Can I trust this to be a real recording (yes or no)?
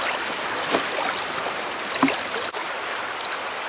yes